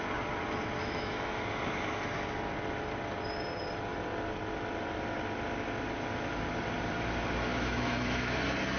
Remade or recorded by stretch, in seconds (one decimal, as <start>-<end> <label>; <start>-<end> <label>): 0.0-0.8 recorded; 0.8-1.4 remade; 1.4-7.5 recorded; 7.5-8.3 remade; 8.3-8.8 recorded